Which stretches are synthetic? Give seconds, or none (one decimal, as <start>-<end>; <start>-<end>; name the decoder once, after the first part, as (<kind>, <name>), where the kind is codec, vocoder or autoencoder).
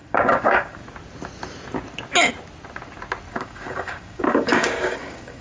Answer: 0.0-0.8 (codec, DAC); 3.3-5.4